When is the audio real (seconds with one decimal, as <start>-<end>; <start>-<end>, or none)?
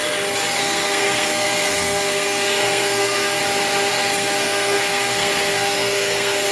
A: 0.0-0.6; 3.4-3.9